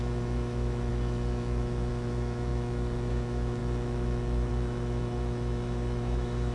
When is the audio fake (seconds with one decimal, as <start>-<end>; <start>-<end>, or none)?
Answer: 0.0-6.5